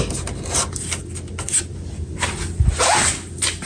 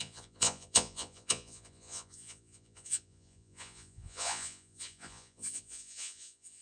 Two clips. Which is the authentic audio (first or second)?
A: first